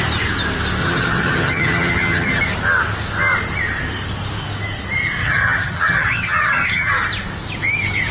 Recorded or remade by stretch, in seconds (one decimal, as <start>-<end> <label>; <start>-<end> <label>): 0.0-0.8 recorded; 0.8-2.4 remade; 2.4-5.2 recorded; 5.2-6.9 remade; 6.9-8.1 recorded